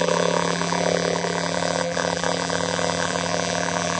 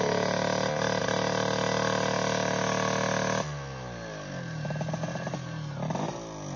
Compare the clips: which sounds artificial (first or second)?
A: first